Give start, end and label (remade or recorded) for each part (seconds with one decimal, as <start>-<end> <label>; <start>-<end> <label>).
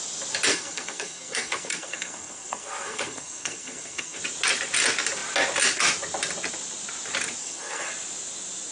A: 0.0-0.5 recorded; 0.5-4.2 remade; 4.2-7.4 recorded; 7.4-7.9 remade; 7.9-8.7 recorded